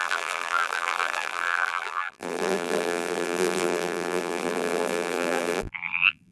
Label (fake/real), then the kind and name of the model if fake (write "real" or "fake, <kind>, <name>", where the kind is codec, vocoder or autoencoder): fake, vocoder, BigVGAN v2